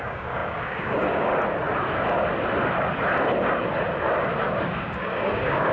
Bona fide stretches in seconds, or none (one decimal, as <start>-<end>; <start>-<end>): 1.3-4.7